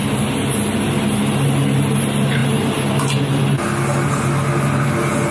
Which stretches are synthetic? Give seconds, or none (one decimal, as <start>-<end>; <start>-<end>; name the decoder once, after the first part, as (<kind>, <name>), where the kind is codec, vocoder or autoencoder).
none